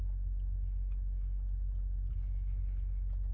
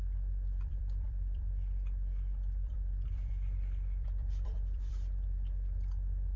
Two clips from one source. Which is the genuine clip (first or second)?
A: first